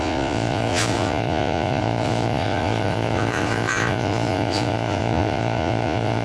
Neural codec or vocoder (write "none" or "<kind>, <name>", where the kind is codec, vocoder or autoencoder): vocoder, Vocos